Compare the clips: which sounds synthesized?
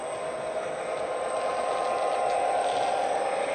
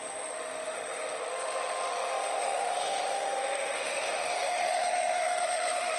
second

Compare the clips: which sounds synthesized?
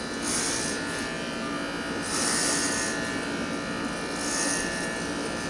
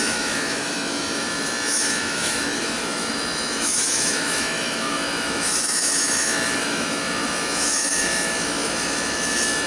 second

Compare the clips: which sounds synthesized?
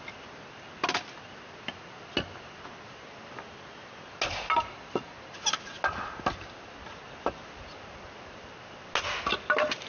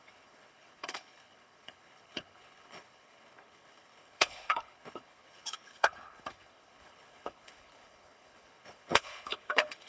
second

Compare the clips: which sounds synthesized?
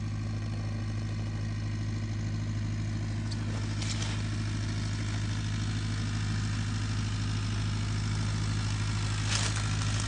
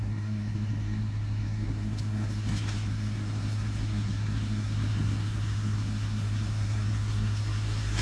second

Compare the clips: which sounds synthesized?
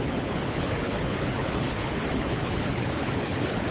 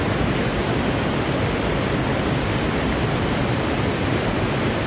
first